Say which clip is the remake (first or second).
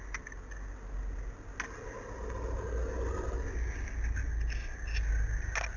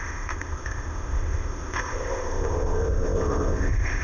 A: second